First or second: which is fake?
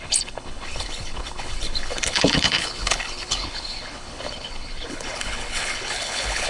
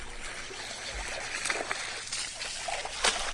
first